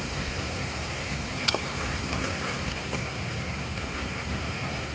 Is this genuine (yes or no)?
no